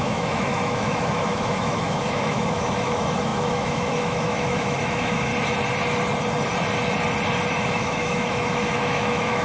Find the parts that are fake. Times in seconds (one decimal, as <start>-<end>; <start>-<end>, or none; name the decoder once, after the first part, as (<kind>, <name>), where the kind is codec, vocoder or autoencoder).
0.0-5.3 (autoencoder, DAC-VAE); 7.5-9.4